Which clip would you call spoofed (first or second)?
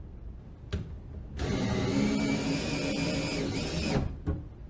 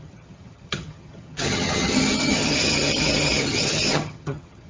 second